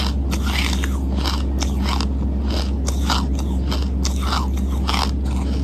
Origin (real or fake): real